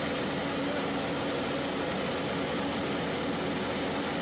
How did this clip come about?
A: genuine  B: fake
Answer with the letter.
A